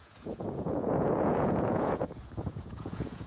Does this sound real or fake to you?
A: fake